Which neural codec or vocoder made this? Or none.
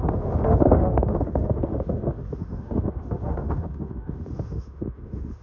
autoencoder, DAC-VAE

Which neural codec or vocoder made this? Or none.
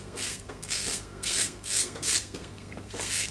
codec, SNAC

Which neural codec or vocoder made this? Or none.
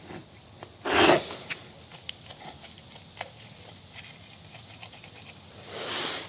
none